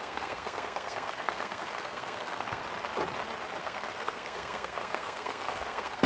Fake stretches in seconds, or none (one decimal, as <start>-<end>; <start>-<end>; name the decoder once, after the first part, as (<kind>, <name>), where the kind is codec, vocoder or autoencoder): 0.0-2.6 (codec, SNAC); 3.6-6.1

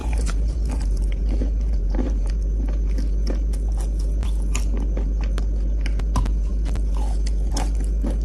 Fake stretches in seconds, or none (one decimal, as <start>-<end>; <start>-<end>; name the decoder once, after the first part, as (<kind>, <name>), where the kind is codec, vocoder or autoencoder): 0.0-2.3 (vocoder, BigVGAN v2)

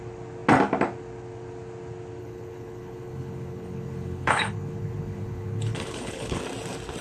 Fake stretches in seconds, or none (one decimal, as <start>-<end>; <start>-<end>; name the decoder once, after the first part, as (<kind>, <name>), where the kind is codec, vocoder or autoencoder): 2.2-6.4 (codec, HILCodec)

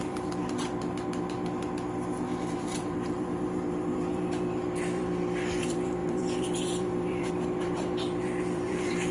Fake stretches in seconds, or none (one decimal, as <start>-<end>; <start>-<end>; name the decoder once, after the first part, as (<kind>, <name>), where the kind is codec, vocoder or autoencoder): 0.0-0.4 (vocoder, BigVGAN v2); 2.5-9.1

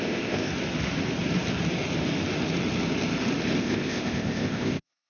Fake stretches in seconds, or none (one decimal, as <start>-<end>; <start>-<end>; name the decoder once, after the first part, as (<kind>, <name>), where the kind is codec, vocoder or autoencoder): 0.0-0.5 (codec, ZipCodec); 3.6-5.1

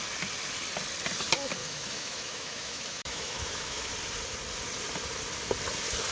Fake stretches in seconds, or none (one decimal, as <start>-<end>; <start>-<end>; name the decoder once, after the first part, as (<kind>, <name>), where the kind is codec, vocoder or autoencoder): 1.6-3.9 (autoencoder, DAC-VAE)

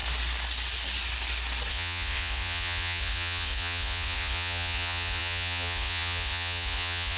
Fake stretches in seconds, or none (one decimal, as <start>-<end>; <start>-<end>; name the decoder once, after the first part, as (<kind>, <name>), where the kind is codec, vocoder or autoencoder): 1.7-7.2 (vocoder, Vocos)